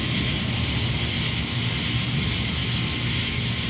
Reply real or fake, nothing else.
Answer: real